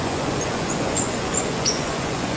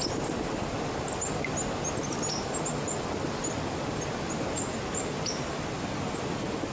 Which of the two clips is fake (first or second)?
first